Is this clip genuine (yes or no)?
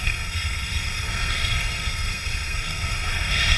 no